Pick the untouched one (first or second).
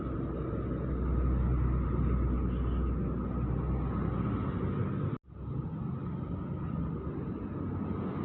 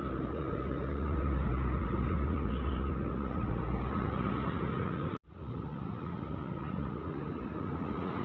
first